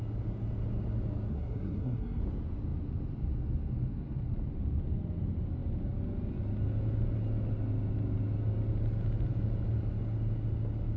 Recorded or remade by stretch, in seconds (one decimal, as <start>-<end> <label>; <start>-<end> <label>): 0.0-1.3 recorded; 1.3-2.2 remade; 2.2-11.0 recorded